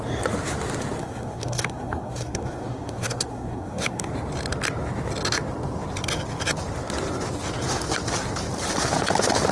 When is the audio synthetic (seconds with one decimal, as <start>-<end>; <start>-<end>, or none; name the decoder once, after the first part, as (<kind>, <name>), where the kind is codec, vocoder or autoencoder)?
1.0-4.1 (codec, SNAC)